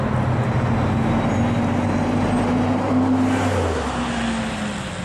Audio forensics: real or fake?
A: real